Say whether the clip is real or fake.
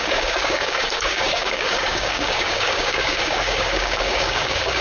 fake